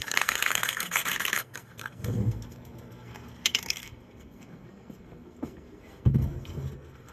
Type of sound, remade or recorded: remade